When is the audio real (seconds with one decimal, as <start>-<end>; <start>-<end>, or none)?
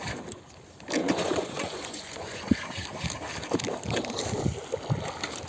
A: 0.0-1.0; 2.5-5.5